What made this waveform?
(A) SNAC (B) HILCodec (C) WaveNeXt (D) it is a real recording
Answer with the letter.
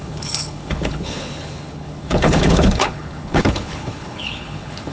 B